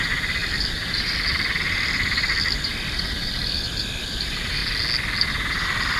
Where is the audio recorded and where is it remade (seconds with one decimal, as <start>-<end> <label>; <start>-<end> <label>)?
0.0-4.6 remade; 4.6-5.3 recorded; 5.3-6.0 remade